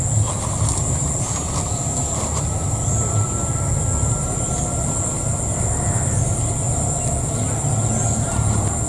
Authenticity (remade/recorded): recorded